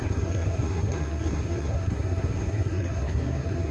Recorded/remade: remade